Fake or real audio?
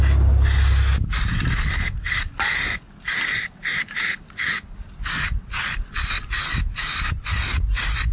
real